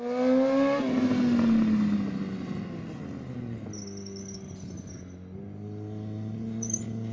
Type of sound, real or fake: real